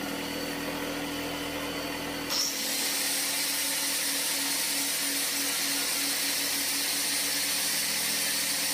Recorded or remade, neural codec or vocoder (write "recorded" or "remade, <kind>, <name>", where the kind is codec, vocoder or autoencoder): recorded